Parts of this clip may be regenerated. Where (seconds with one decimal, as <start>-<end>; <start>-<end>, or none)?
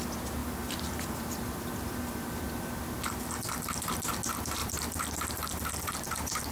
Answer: 0.4-3.0; 4.6-6.5